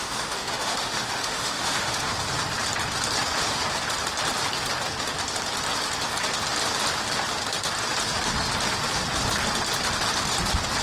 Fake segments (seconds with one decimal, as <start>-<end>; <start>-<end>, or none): 0.0-2.1